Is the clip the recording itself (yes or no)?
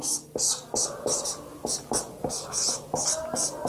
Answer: yes